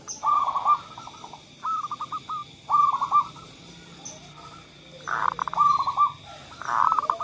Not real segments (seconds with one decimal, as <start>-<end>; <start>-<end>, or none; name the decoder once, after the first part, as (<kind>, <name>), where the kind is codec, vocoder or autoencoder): none